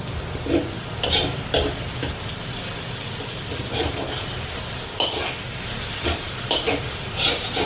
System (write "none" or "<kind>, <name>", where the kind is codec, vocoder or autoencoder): none